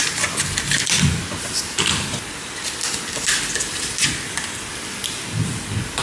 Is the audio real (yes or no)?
yes